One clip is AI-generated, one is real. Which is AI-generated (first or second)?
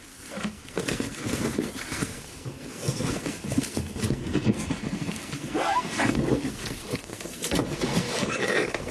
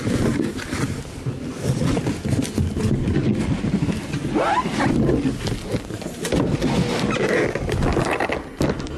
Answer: first